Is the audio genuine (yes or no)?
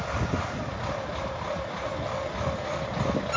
yes